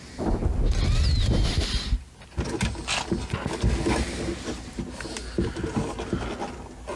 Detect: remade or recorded recorded